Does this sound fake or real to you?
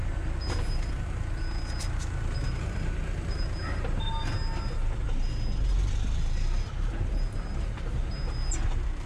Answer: real